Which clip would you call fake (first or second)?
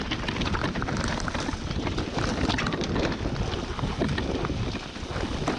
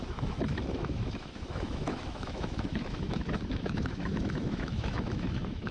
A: second